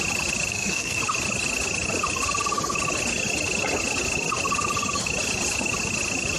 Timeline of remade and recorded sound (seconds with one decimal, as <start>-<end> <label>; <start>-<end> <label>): 0.0-0.5 recorded; 0.5-1.0 remade; 1.0-6.4 recorded